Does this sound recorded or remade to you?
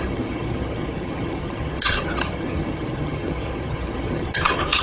remade